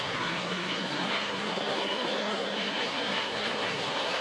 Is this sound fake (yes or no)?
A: yes